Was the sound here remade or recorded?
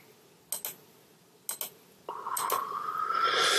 recorded